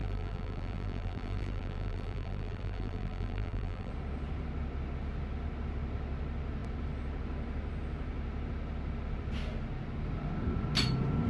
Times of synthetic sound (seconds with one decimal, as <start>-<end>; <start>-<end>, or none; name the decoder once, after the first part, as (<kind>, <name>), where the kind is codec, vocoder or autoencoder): 0.0-3.9 (vocoder, BigVGAN v2)